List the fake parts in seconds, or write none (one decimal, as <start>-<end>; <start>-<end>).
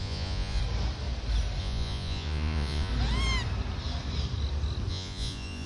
0.0-0.6; 1.6-2.9; 4.9-5.7